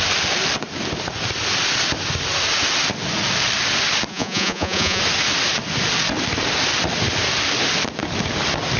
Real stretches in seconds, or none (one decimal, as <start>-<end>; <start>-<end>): 0.0-4.1; 5.0-8.8